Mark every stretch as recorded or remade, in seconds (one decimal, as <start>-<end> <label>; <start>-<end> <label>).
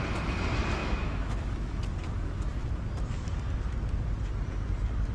0.0-0.8 recorded; 0.8-1.8 remade; 1.8-5.1 recorded